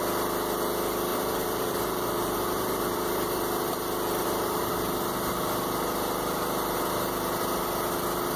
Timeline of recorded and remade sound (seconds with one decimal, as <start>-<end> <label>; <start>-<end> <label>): 0.0-1.1 recorded; 1.1-3.4 remade; 3.4-4.2 recorded; 4.2-4.7 remade; 4.7-8.4 recorded